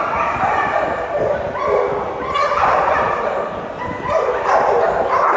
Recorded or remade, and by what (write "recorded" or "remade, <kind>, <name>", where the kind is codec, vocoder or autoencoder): recorded